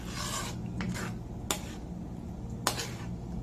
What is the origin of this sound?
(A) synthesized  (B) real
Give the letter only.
B